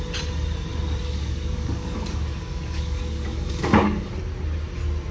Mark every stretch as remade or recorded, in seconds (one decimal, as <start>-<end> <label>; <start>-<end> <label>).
0.0-1.0 recorded; 1.0-4.1 remade; 4.1-5.1 recorded